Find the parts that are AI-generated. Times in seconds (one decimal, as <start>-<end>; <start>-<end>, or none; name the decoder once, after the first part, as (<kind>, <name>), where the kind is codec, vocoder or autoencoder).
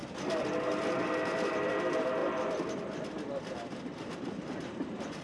1.0-2.2 (vocoder, BigVGAN v2); 4.3-5.2